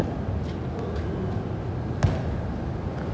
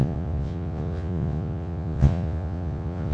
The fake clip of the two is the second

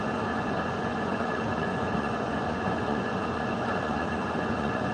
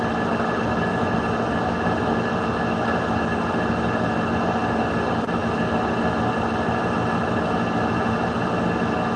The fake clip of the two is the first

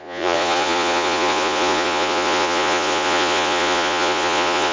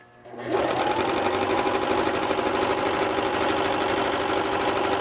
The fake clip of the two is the first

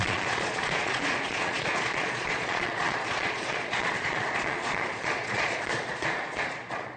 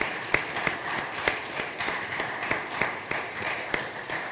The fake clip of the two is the first